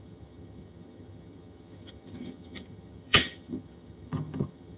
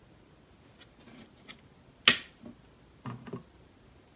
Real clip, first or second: second